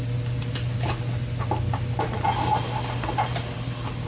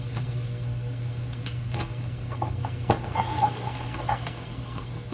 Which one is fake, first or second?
second